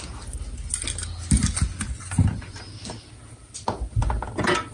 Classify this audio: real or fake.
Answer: real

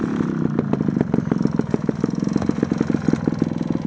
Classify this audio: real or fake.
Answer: real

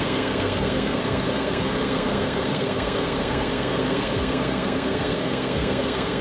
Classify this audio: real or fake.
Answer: fake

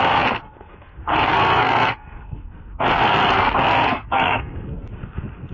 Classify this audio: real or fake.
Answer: fake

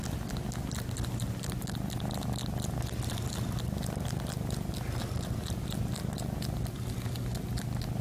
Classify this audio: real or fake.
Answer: real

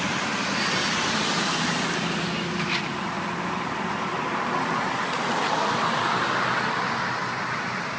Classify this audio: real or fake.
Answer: real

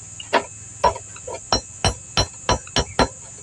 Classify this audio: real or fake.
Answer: real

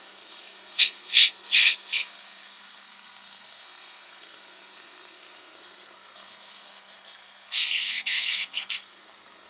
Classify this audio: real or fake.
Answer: fake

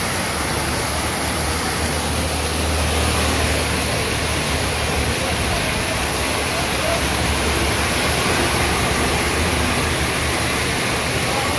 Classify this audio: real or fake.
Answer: real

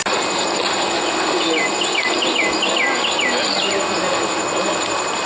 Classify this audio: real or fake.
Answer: real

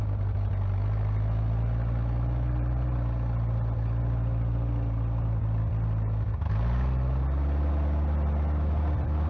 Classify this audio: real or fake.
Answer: real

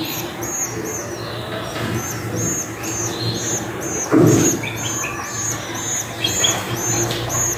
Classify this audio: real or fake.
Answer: real